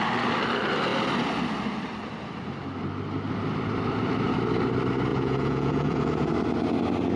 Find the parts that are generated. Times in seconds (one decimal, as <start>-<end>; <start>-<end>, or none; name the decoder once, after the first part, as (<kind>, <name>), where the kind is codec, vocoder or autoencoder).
5.1-6.3 (vocoder, Vocos)